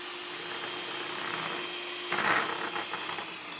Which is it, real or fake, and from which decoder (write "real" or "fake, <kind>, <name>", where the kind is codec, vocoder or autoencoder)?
real